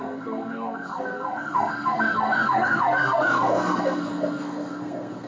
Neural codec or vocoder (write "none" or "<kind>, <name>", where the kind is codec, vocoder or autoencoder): codec, SNAC